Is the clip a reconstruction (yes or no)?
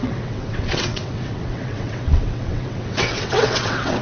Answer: yes